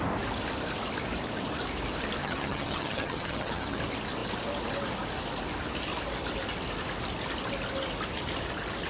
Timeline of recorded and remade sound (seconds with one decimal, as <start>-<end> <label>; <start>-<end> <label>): 0.0-2.2 recorded; 2.2-3.8 remade; 3.8-8.9 recorded